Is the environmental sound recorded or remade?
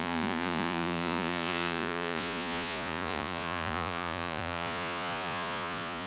remade